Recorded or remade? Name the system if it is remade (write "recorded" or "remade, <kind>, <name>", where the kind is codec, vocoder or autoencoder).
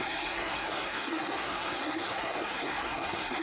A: remade, codec, SNAC